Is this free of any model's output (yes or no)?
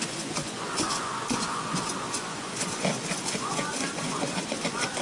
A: no